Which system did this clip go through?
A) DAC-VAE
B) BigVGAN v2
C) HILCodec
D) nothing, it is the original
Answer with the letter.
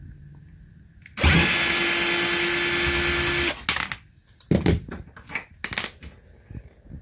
D